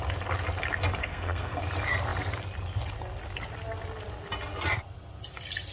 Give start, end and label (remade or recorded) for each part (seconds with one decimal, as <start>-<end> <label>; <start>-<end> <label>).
0.0-1.0 recorded; 1.0-1.6 remade; 1.6-5.7 recorded